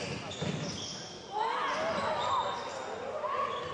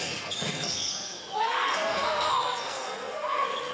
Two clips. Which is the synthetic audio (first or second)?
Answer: second